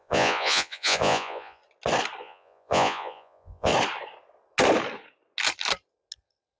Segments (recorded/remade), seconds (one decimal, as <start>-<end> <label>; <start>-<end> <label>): 0.0-1.6 remade; 1.6-2.2 recorded; 2.2-3.7 remade; 3.7-6.6 recorded